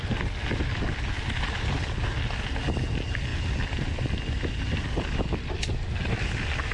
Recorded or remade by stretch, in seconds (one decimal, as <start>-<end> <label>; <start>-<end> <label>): 0.0-6.7 recorded